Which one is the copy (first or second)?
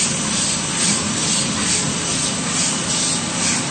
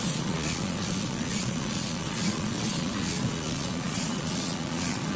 second